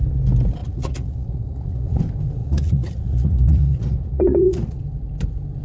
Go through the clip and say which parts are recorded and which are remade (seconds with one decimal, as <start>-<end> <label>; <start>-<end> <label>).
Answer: 0.0-0.6 recorded; 0.6-2.0 remade; 2.0-2.4 recorded; 2.4-4.8 remade; 4.8-5.6 recorded